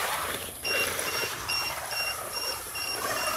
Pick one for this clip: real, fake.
fake